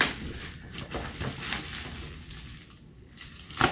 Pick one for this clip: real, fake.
real